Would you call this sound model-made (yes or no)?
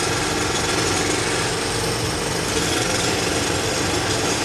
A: no